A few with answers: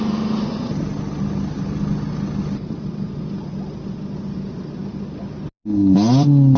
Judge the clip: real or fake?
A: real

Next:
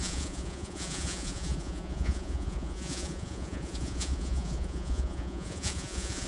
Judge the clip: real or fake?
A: fake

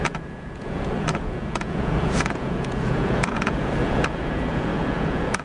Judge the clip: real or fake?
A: fake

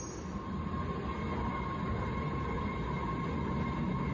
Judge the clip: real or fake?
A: real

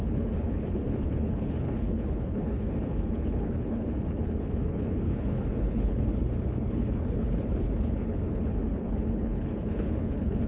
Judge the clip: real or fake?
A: fake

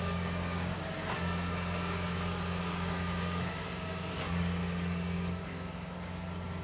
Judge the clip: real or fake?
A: fake